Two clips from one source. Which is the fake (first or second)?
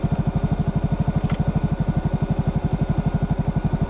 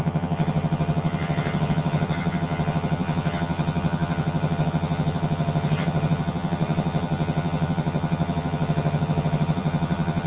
second